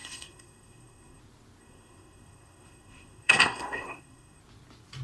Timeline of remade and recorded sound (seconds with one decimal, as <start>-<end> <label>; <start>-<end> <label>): 0.0-1.2 remade; 1.2-1.6 recorded; 1.6-4.4 remade; 4.4-5.0 recorded